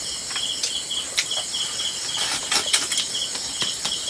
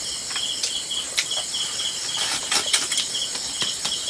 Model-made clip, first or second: second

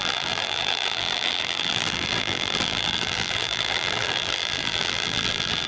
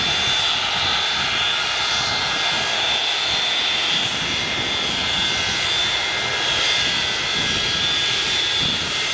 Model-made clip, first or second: first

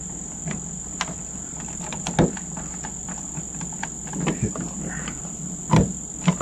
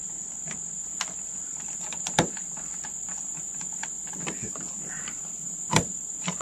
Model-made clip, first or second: second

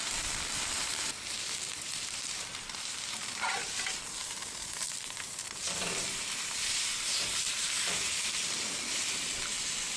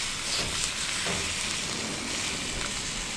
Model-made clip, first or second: first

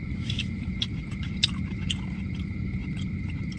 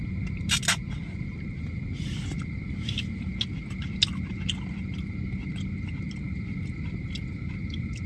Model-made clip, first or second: first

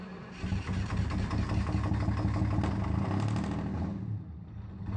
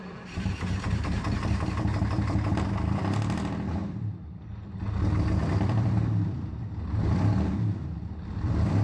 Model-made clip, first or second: second